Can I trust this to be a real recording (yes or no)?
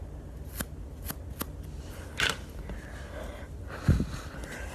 yes